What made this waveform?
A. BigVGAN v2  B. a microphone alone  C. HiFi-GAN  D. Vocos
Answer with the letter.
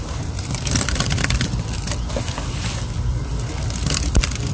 A